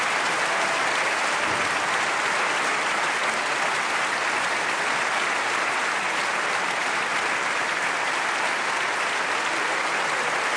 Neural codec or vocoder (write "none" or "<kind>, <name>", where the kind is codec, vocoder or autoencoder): none